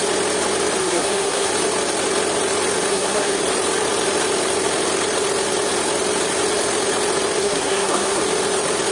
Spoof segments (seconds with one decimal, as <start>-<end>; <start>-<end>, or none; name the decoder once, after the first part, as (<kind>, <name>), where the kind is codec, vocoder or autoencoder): 0.8-1.5 (codec, SNAC); 2.9-3.4; 7.4-8.2